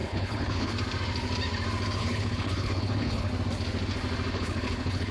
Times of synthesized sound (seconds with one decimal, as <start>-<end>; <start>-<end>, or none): 0.0-0.7; 2.0-3.3; 4.3-5.1